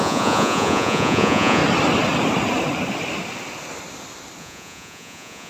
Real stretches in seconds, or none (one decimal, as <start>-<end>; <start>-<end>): 1.6-4.4